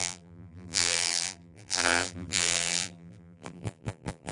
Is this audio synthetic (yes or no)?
yes